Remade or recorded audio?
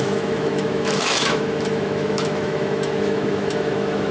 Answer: remade